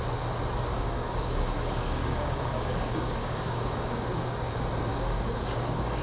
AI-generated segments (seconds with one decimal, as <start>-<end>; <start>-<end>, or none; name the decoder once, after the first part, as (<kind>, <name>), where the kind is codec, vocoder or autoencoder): 0.7-4.1 (codec, DAC); 4.9-6.0